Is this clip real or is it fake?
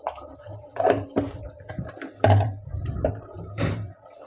fake